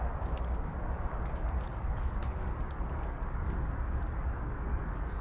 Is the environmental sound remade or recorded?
remade